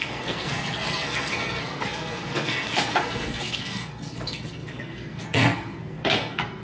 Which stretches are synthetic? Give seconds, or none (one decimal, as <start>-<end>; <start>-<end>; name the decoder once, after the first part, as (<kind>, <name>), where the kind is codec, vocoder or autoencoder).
0.0-6.6 (codec, SNAC)